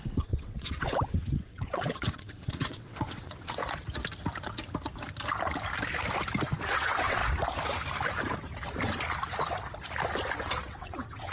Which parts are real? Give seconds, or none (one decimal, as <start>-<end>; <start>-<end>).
3.6-6.7; 7.2-10.4